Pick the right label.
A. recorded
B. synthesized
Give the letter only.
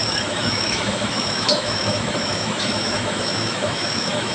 B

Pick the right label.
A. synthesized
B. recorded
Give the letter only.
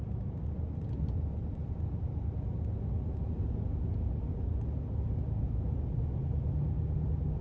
B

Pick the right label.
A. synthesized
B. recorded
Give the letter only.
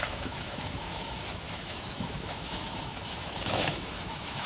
A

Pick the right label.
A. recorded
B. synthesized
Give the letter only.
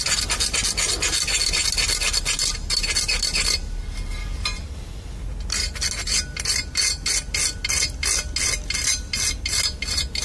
A